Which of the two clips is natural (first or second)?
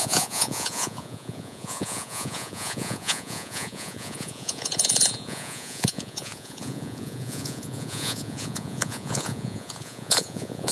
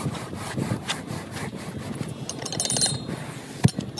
second